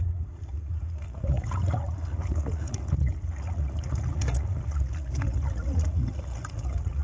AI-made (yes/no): yes